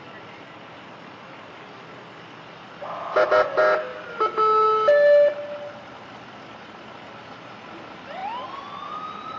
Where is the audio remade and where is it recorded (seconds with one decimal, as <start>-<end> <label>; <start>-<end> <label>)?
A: 0.0-8.2 recorded; 8.2-9.4 remade